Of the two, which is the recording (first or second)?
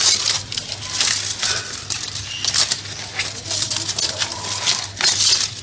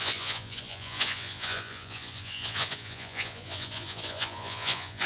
first